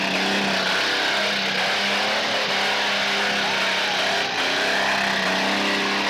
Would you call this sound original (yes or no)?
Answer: yes